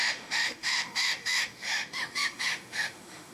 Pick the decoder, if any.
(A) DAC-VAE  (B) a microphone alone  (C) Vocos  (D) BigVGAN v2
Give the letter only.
A